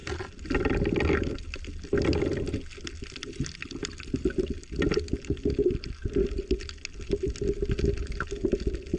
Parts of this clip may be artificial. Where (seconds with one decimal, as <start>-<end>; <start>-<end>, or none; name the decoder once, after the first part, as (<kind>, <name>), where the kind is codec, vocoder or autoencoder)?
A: none